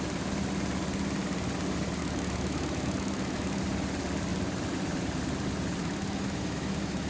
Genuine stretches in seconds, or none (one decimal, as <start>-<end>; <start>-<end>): 0.0-2.0; 3.6-5.8